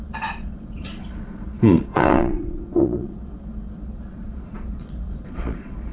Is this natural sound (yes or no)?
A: no